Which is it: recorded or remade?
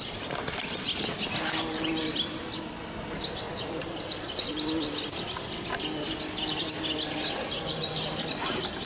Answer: recorded